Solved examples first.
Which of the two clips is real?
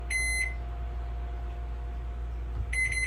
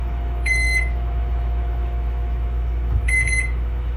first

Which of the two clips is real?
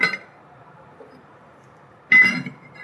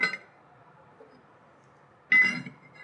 second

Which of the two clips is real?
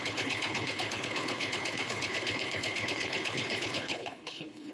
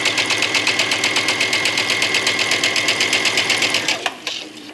second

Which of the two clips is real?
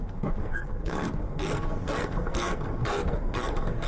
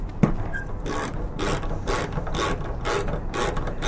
second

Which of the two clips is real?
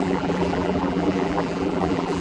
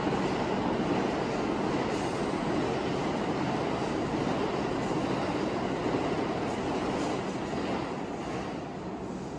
second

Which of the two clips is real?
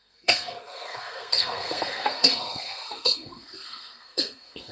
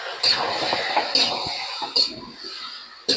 second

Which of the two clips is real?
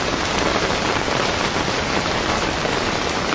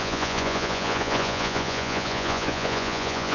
first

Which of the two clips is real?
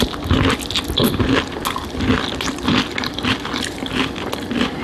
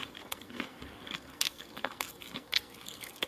first